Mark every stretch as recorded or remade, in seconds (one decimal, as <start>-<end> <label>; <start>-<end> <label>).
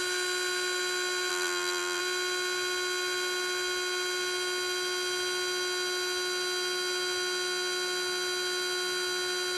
0.0-1.3 recorded; 1.3-2.0 remade; 2.0-9.6 recorded